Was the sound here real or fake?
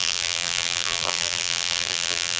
fake